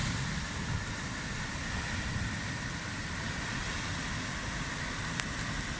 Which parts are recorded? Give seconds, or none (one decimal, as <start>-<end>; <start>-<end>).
0.0-5.8